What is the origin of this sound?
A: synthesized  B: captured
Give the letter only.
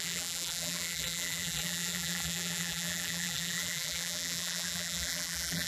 A